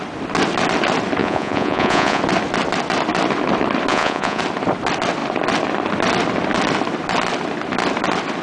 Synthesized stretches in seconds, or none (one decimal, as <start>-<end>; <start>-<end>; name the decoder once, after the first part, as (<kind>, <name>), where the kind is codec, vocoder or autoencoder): 1.2-2.2 (vocoder, Vocos); 3.9-4.4